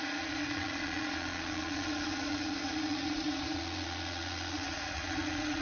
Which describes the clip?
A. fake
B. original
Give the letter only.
A